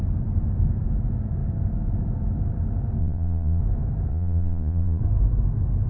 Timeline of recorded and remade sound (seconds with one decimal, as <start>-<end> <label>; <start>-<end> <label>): 0.0-3.0 recorded; 3.0-3.6 remade; 3.6-4.1 recorded; 4.1-5.0 remade; 5.0-5.9 recorded